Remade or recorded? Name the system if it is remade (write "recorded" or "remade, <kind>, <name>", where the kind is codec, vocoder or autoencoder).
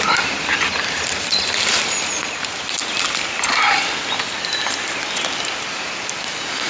recorded